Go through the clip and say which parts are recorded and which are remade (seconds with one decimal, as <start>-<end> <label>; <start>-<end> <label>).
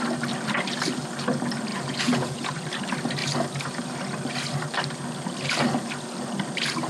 0.0-1.7 recorded; 1.7-2.5 remade; 2.5-6.9 recorded